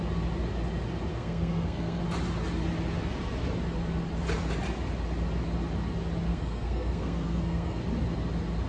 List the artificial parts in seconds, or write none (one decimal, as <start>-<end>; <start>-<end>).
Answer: 1.1-2.0; 6.3-7.8